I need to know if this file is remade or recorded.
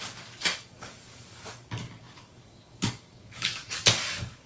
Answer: remade